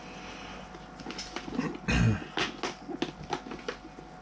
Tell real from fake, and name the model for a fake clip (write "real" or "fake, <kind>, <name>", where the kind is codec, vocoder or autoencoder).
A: real